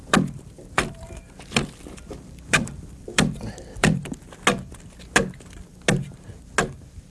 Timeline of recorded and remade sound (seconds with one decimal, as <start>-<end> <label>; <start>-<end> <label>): 0.0-4.0 remade; 4.0-7.1 recorded